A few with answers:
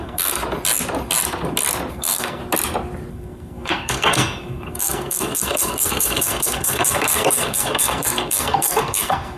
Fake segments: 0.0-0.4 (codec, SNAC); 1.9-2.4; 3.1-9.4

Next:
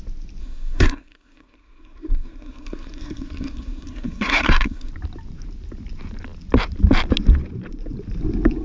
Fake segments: 0.4-4.9 (codec, SNAC)

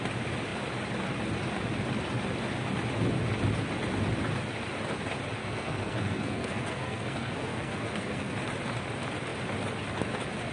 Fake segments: 5.4-8.3 (codec, SNAC)

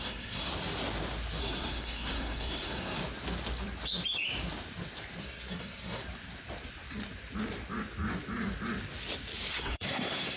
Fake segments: 0.0-0.5 (codec, SNAC); 1.4-3.0; 5.2-6.0; 9.5-10.4

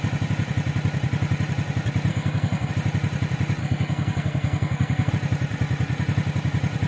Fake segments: 2.1-2.7 (codec, SNAC); 3.6-5.1

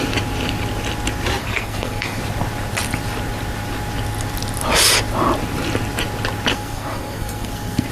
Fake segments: 1.4-2.2 (codec, SNAC); 6.5-7.9

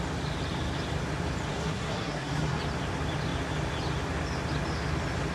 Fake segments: 1.5-2.6 (codec, SNAC)